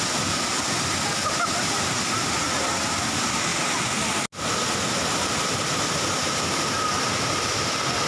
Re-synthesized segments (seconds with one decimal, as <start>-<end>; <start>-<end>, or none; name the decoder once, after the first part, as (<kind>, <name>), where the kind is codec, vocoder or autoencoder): none